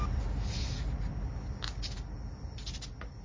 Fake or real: real